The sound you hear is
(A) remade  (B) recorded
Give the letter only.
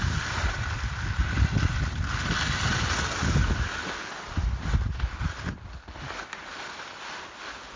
B